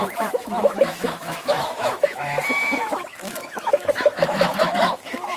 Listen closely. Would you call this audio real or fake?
fake